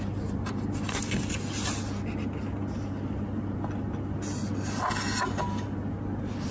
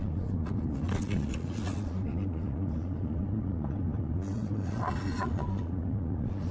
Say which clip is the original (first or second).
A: first